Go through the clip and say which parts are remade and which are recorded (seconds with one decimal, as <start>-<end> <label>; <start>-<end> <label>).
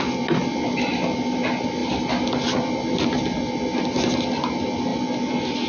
0.0-5.7 recorded